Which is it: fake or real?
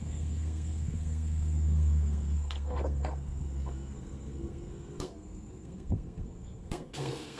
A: fake